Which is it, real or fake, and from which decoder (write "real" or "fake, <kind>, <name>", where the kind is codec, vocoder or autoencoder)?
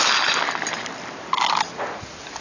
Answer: real